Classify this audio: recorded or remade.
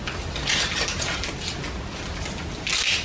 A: recorded